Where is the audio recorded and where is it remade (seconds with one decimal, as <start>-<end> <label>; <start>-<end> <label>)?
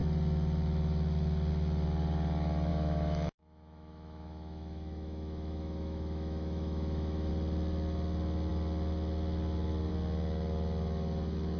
0.0-2.7 recorded; 2.7-7.3 remade; 7.3-11.6 recorded